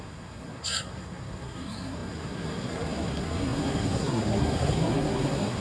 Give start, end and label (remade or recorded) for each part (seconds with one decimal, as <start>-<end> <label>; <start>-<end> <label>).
0.0-5.6 remade